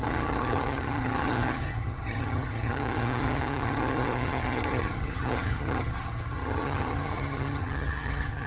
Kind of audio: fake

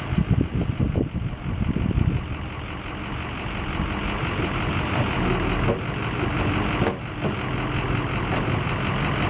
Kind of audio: real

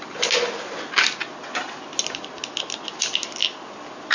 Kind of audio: real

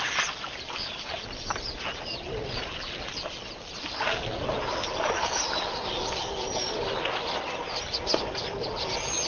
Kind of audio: real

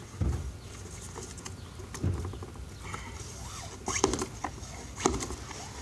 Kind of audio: real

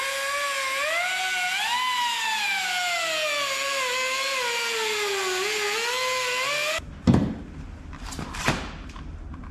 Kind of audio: real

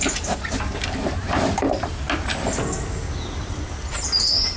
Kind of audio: real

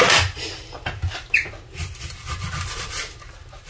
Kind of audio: real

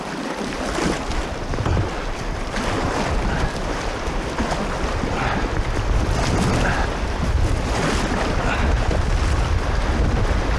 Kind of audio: real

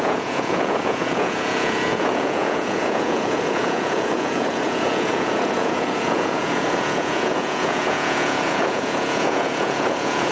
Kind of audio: fake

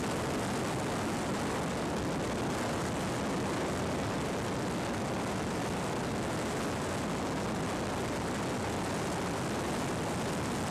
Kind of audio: real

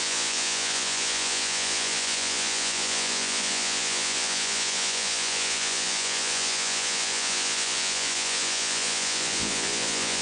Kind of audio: fake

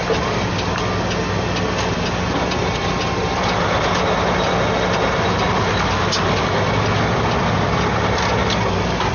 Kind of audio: real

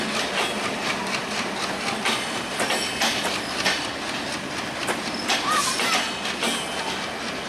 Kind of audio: real